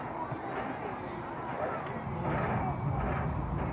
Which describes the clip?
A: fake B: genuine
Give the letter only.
B